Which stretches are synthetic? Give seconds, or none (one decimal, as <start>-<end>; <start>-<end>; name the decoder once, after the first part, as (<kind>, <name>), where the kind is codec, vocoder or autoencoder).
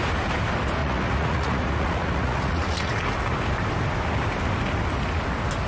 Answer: 0.8-2.9 (vocoder, Vocos)